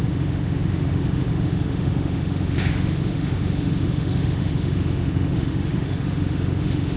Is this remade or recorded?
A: remade